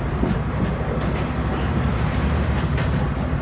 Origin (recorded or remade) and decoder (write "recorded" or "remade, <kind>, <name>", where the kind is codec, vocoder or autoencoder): remade, vocoder, BigVGAN v2